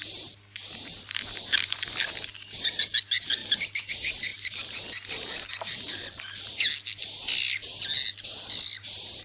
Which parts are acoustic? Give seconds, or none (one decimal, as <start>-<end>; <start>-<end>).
0.0-3.4; 3.9-4.3; 5.6-9.2